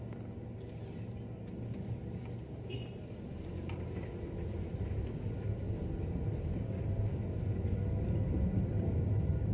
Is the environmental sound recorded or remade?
recorded